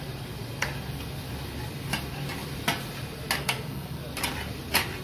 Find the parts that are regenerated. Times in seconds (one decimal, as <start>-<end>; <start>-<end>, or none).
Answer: 3.4-4.0